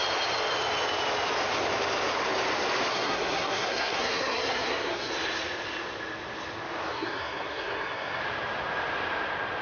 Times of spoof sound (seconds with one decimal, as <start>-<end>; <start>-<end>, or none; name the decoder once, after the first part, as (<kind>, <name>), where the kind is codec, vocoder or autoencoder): 2.9-5.1 (codec, SNAC); 6.9-8.2